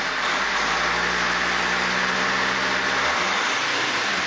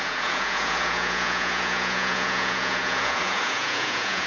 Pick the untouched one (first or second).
first